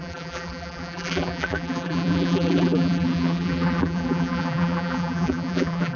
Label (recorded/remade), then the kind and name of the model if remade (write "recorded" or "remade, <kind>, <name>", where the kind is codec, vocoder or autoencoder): remade, vocoder, BigVGAN v2